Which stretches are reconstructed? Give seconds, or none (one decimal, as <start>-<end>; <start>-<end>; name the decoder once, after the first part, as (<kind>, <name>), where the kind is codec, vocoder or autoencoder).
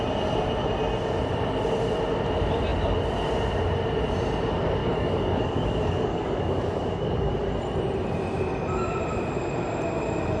4.8-7.3 (codec, DAC)